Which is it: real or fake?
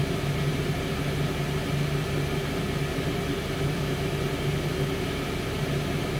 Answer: real